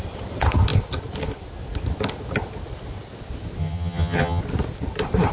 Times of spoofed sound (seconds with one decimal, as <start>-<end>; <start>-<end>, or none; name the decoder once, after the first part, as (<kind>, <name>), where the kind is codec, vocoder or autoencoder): 3.6-4.4 (vocoder, HiFi-GAN)

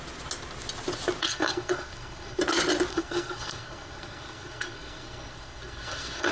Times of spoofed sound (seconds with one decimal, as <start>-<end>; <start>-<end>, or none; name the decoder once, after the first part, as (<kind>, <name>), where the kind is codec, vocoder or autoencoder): 1.2-2.4 (codec, SNAC); 2.9-6.3